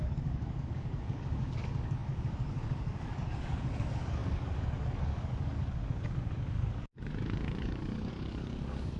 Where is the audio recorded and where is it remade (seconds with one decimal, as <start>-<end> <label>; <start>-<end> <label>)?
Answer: 0.0-9.0 remade